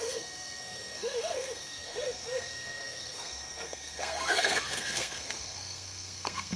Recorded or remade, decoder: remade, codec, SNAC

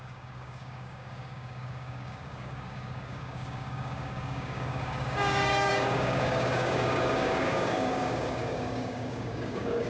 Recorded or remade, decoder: remade, codec, DAC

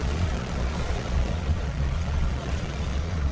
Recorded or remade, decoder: remade, vocoder, Vocos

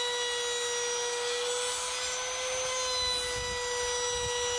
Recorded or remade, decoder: recorded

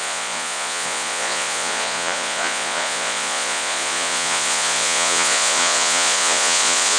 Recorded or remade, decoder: remade, vocoder, Vocos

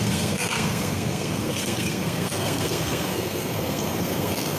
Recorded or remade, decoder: remade, codec, SNAC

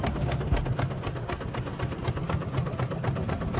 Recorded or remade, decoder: recorded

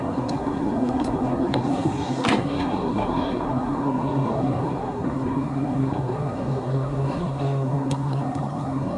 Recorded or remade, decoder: remade, codec, SNAC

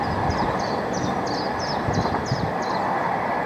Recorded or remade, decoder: recorded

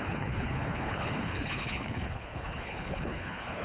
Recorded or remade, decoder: remade, codec, HILCodec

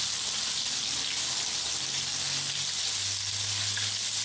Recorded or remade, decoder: recorded